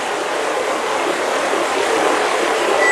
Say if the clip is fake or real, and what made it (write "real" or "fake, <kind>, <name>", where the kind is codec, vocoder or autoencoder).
real